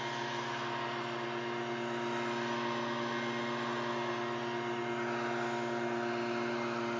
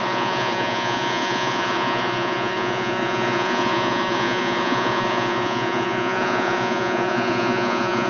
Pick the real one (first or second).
first